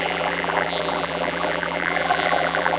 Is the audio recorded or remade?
remade